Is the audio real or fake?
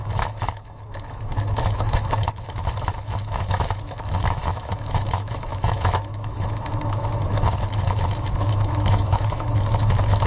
fake